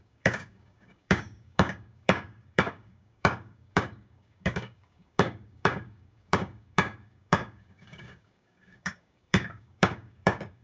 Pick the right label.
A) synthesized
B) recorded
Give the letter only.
A